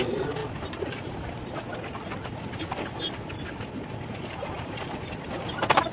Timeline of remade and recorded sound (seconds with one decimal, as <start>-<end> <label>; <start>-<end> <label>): 0.0-5.9 recorded